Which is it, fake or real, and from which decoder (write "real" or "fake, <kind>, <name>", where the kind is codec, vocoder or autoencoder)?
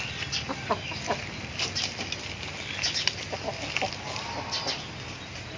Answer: real